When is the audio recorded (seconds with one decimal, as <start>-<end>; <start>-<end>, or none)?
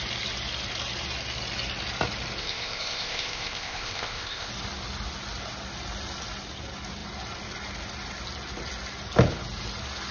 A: 0.0-2.4; 4.5-10.1